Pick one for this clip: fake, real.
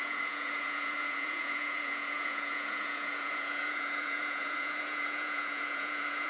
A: fake